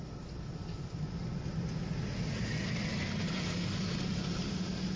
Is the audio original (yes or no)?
yes